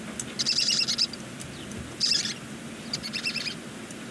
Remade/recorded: recorded